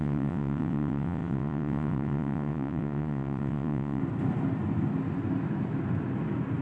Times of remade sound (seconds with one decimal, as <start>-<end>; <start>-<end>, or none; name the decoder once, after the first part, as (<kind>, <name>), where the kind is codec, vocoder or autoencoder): 0.0-4.0 (vocoder, WaveNeXt)